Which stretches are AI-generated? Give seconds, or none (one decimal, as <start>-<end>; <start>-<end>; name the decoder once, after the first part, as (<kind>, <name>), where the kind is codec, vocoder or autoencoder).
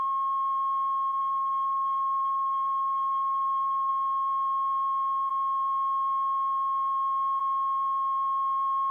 1.2-3.9 (autoencoder, DAC-VAE)